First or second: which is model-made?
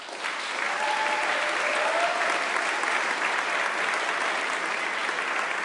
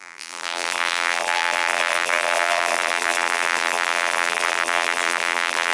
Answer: second